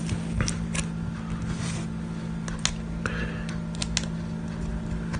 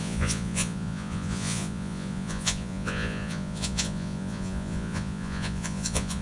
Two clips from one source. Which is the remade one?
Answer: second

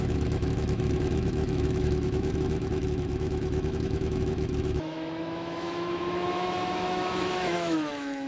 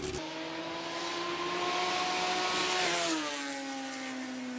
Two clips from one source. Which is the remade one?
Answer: first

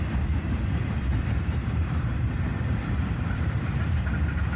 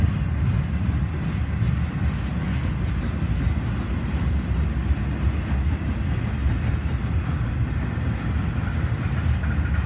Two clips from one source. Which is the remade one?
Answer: first